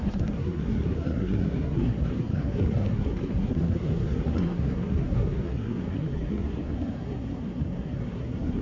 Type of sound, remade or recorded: remade